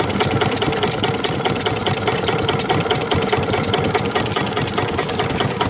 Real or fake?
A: fake